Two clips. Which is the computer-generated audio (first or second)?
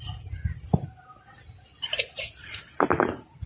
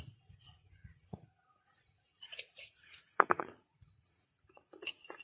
second